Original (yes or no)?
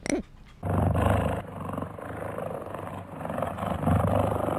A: yes